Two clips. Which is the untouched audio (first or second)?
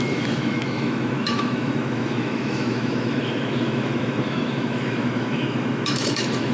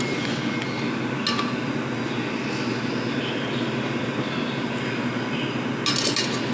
second